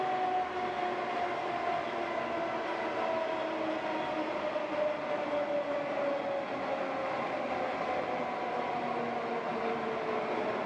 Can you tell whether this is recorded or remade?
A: recorded